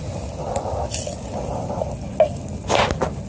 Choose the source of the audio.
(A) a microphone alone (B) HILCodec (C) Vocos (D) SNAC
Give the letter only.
A